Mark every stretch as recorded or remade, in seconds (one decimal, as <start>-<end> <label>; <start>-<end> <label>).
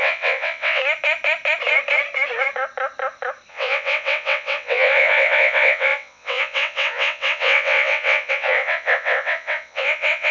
0.0-0.8 remade; 0.8-3.5 recorded; 3.5-10.3 remade